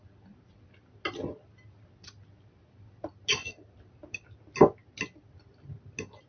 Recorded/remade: recorded